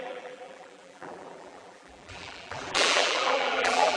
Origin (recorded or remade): remade